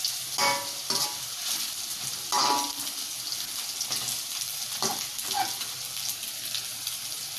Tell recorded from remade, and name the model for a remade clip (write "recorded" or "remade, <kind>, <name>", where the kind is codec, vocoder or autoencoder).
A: recorded